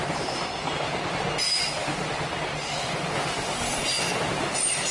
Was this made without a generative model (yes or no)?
yes